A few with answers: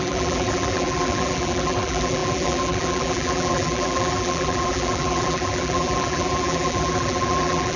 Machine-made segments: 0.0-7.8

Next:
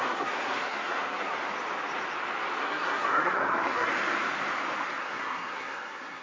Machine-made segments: 0.0-1.4; 2.6-3.9; 5.0-6.2

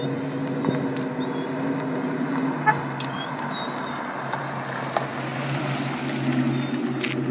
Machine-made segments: none

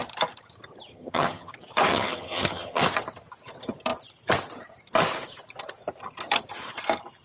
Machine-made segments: 0.9-1.5; 1.9-2.8

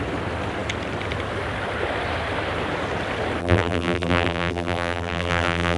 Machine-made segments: 3.4-5.8

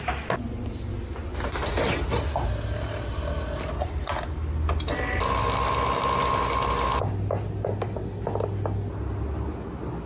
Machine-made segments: none

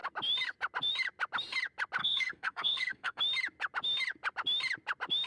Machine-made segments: 2.0-3.2